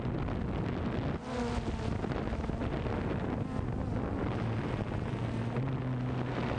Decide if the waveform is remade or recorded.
recorded